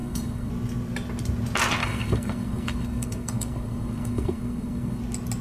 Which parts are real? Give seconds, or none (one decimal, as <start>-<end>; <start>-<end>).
0.5-1.8; 5.0-5.4